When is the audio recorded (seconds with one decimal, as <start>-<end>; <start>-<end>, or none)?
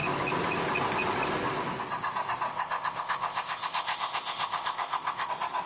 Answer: 0.0-2.5; 5.3-5.7